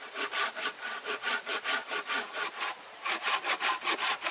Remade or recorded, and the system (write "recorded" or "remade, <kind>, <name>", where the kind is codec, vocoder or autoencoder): remade, vocoder, BigVGAN v2